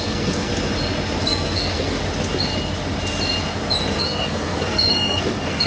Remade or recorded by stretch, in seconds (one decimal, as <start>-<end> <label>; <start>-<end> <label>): 0.0-0.5 remade; 0.5-1.2 recorded; 1.2-2.0 remade; 2.0-4.0 recorded; 4.0-5.7 remade